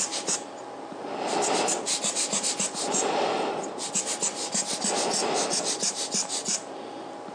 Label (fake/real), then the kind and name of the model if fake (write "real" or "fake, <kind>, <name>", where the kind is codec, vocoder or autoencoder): real